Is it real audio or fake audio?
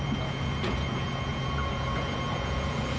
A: fake